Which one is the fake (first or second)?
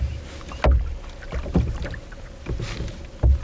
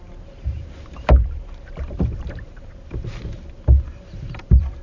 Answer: second